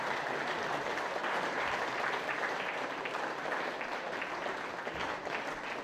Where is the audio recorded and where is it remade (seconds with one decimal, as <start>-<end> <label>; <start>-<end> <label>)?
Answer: 0.0-1.2 recorded; 1.2-4.7 remade; 4.7-5.8 recorded